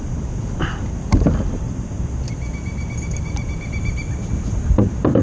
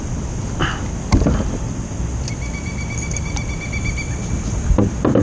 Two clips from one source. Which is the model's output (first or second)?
first